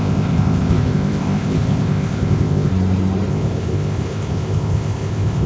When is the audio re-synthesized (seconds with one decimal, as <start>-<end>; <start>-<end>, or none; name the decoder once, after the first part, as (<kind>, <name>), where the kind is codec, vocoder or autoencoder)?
0.0-2.7 (codec, ZipCodec); 3.3-5.5